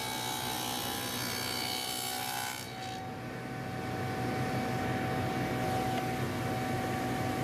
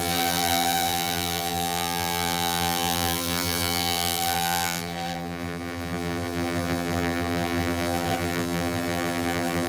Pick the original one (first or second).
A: first